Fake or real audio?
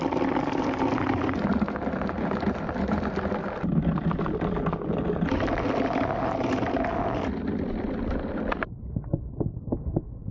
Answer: real